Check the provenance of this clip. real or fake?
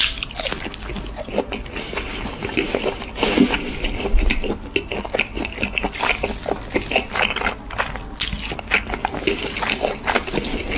real